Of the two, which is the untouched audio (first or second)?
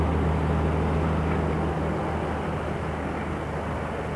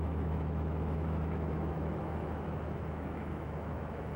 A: first